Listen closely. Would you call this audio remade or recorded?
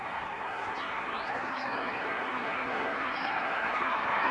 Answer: remade